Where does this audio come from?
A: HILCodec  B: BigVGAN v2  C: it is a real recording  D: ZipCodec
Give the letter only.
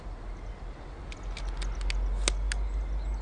C